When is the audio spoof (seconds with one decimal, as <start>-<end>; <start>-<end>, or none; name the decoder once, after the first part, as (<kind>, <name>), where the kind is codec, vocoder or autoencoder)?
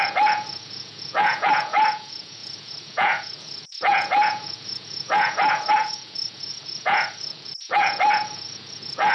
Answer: 0.0-9.1 (vocoder, Vocos)